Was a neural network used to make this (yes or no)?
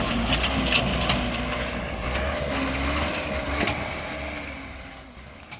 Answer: no